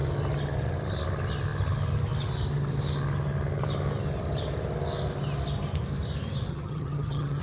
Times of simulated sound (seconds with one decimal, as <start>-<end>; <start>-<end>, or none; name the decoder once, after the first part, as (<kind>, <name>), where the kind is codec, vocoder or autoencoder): 6.5-7.4 (vocoder, HiFi-GAN)